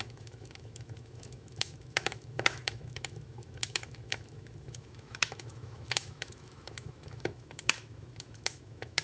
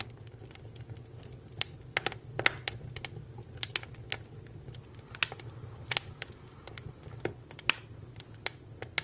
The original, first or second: second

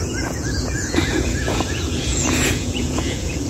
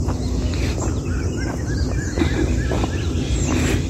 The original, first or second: second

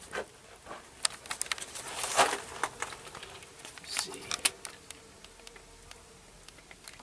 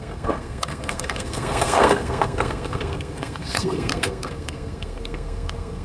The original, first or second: first